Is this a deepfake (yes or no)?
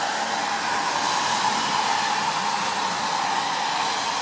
no